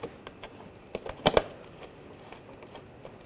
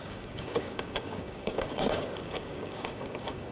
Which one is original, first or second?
first